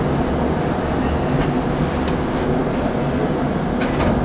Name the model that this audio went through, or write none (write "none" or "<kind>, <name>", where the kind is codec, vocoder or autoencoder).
none